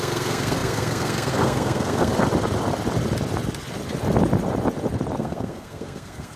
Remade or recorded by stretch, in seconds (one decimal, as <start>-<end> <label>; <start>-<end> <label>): 0.0-2.1 remade; 2.1-5.2 recorded; 5.2-6.4 remade